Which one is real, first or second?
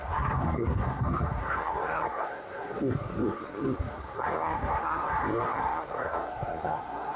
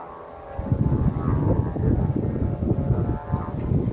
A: second